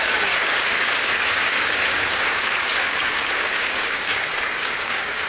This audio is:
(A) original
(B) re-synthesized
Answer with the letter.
B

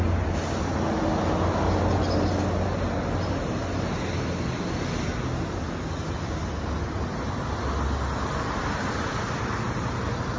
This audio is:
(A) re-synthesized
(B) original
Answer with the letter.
B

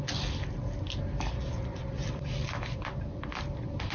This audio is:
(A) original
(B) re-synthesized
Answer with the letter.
A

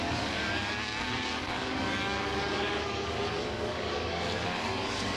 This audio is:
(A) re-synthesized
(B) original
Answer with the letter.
A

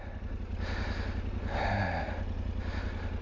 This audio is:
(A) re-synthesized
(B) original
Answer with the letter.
B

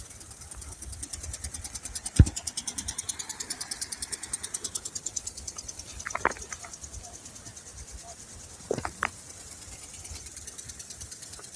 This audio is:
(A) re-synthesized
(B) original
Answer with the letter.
B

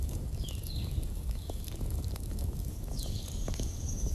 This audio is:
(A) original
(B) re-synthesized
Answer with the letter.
B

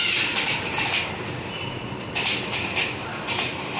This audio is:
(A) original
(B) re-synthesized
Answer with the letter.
A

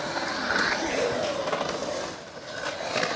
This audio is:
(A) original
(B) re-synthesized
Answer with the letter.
A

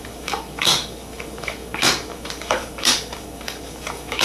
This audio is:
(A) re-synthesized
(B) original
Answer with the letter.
A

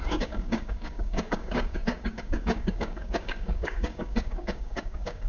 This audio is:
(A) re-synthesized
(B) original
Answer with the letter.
A